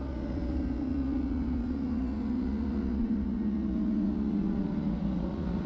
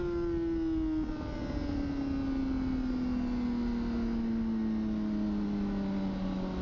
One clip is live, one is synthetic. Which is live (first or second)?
second